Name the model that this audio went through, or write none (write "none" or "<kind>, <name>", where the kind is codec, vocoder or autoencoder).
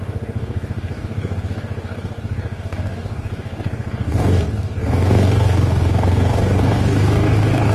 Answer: codec, DAC